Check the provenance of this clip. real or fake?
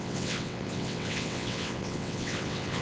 fake